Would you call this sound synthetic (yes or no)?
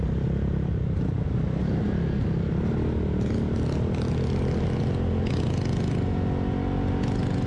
no